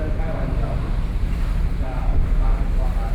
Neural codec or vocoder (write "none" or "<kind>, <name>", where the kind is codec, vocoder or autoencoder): none